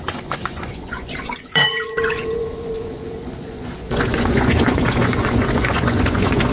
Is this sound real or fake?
fake